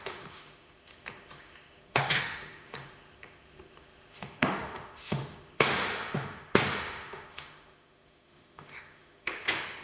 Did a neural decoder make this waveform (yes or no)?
yes